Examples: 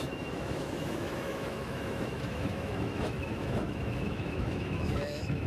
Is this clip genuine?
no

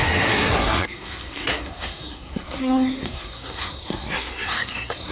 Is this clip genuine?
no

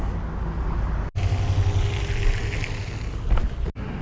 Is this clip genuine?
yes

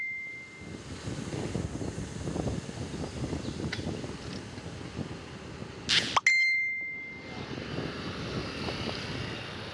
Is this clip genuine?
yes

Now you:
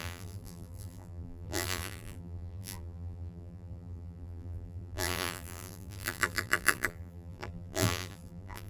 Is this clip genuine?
no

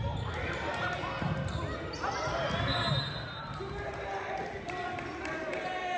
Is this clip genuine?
yes